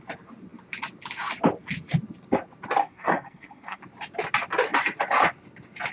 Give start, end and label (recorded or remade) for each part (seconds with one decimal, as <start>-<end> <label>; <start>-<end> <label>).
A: 0.0-2.8 recorded; 2.8-3.8 remade; 3.8-5.9 recorded